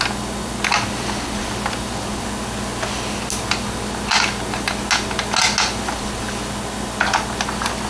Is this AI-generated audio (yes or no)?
no